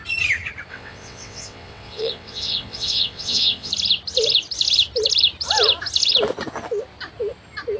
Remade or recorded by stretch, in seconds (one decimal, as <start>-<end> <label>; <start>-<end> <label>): 0.0-0.7 recorded; 0.7-3.7 remade; 3.7-7.8 recorded